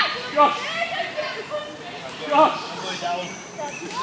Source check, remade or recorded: recorded